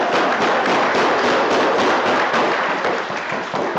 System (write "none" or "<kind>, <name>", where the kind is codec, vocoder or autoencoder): none